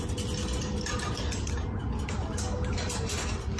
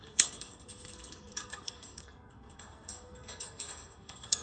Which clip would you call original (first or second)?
first